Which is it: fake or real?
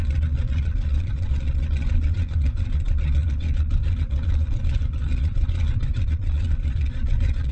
fake